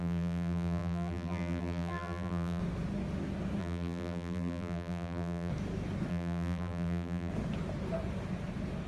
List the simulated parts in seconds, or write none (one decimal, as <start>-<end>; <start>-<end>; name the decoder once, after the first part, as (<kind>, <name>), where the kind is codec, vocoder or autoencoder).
0.0-2.6 (vocoder, BigVGAN v2); 3.6-5.5; 6.1-7.3